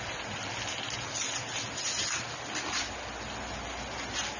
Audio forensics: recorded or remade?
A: recorded